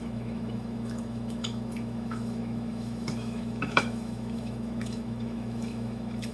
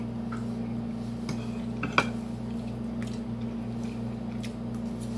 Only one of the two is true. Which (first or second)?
second